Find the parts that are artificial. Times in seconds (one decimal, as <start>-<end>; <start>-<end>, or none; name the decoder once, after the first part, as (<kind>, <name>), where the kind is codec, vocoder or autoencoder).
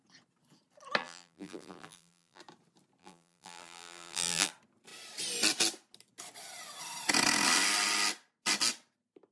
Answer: 1.0-2.4 (vocoder, BigVGAN v2); 3.0-4.5